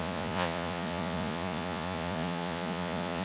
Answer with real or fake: fake